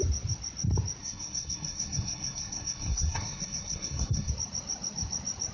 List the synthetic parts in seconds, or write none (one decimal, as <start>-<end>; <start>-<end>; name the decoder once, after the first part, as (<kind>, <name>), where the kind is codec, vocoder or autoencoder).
1.0-4.3 (codec, SNAC)